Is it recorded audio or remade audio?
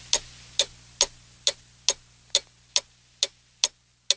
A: recorded